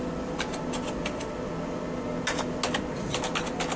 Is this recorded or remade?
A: recorded